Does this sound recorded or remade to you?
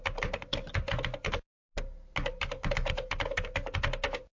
recorded